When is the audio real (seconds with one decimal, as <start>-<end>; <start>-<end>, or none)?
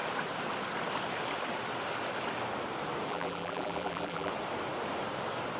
0.0-3.1; 4.3-5.6